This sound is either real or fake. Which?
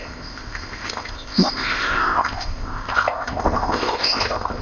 fake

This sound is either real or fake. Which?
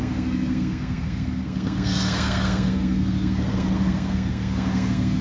fake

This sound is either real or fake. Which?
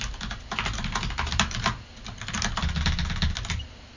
real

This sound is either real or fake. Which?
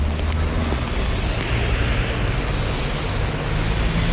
real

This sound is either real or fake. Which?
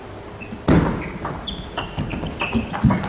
real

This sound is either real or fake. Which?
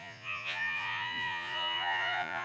fake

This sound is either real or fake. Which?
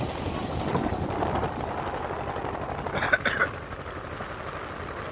real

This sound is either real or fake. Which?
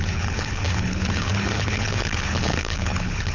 fake